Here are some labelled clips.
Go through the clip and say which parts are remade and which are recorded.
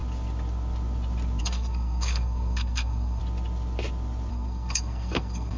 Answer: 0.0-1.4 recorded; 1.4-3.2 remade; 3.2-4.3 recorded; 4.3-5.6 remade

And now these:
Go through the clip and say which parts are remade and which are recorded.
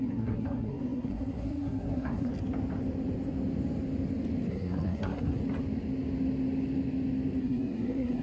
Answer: 0.0-2.3 remade; 2.3-4.5 recorded; 4.5-5.4 remade; 5.4-7.4 recorded; 7.4-8.2 remade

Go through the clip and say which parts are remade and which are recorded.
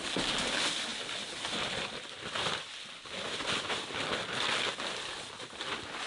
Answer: 0.0-6.1 recorded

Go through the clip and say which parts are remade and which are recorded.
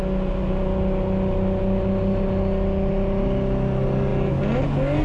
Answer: 0.0-5.0 recorded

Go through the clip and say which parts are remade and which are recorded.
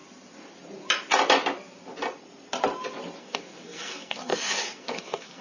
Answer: 0.0-3.2 recorded; 3.2-5.4 remade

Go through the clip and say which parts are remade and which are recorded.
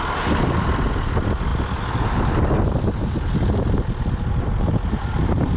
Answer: 0.0-5.6 recorded